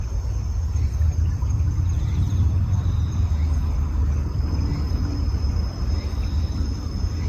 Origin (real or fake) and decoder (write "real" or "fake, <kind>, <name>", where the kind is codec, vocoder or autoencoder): real